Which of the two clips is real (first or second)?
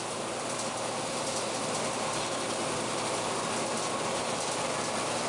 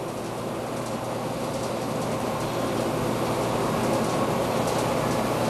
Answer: second